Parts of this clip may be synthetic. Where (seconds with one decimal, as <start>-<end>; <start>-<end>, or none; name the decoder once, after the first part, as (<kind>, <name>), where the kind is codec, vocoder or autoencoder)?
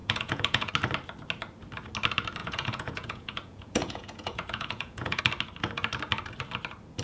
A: 0.0-0.7 (vocoder, Vocos); 2.4-5.2